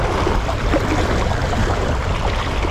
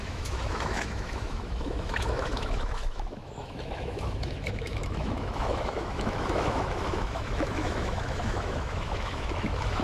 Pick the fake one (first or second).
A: second